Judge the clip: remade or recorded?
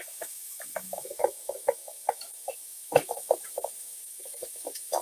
remade